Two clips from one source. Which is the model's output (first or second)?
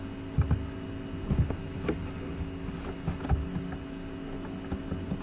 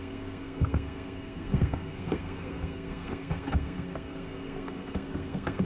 second